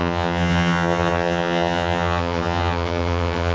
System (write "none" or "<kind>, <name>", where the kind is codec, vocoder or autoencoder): vocoder, HiFi-GAN